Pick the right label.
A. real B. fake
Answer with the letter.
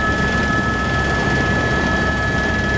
B